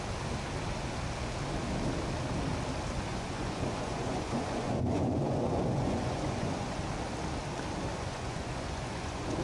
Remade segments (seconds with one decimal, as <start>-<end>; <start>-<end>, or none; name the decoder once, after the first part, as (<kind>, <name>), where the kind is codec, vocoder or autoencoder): 3.1-6.8 (vocoder, Vocos); 7.9-9.4